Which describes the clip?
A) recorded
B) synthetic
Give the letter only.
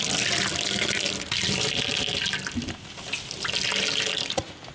A